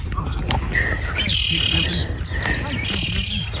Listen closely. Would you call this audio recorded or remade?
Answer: recorded